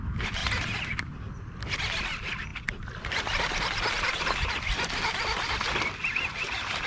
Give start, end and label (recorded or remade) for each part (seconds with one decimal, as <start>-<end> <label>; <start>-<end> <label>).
0.0-6.9 recorded